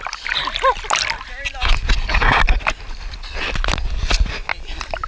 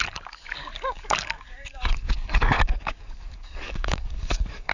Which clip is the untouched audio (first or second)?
first